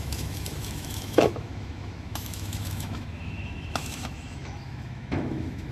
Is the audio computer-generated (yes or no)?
yes